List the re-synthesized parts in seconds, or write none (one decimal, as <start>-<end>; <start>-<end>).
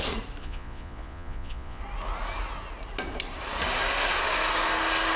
0.4-1.8